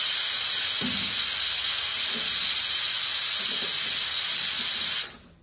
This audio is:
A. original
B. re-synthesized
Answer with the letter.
A